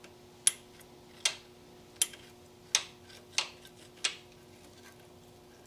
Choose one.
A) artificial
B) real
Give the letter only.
B